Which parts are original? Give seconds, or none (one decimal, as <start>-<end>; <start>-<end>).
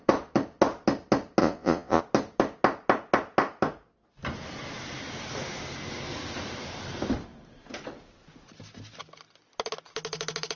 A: 0.0-1.4; 2.0-10.6